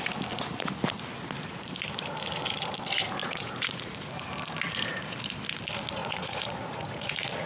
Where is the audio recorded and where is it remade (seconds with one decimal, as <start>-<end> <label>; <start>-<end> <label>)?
0.0-3.2 recorded; 3.2-4.1 remade; 4.1-6.0 recorded; 6.0-7.5 remade